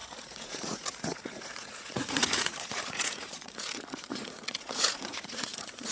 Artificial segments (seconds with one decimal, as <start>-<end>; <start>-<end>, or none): 0.0-5.9